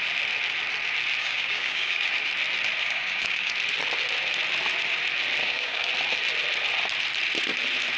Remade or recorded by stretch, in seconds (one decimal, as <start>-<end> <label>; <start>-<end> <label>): 0.0-1.2 recorded; 1.2-2.1 remade; 2.1-2.8 recorded; 2.8-3.5 remade; 3.5-5.4 recorded; 5.4-5.9 remade; 5.9-8.0 recorded